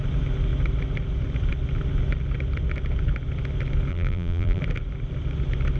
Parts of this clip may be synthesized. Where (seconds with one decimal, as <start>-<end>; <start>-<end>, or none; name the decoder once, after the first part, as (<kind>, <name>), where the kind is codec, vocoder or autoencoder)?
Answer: 3.9-4.6 (vocoder, BigVGAN v2)